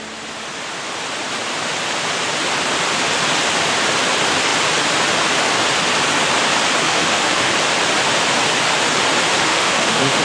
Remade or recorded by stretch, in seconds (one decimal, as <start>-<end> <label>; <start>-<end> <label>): 0.0-6.8 recorded; 6.8-7.5 remade; 7.5-9.5 recorded; 9.5-10.2 remade